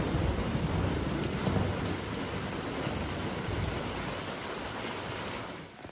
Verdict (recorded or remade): recorded